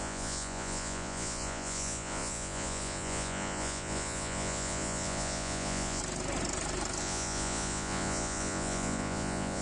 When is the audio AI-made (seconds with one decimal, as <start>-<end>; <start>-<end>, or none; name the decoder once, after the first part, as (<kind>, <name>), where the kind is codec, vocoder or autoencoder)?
0.0-6.0 (vocoder, Vocos); 7.0-9.6